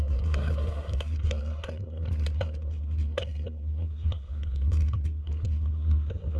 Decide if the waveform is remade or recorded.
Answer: remade